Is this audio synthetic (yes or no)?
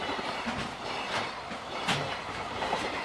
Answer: yes